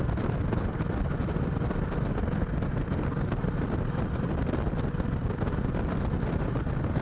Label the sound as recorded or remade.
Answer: recorded